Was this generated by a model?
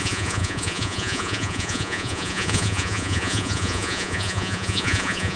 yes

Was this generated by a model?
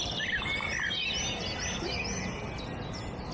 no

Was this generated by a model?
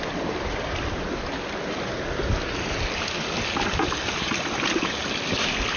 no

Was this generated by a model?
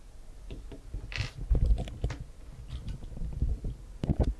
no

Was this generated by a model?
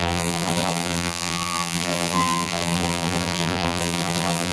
yes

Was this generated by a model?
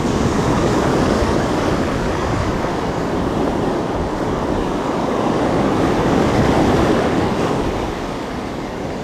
yes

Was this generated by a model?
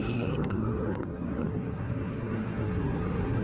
yes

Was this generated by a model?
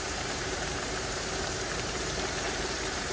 yes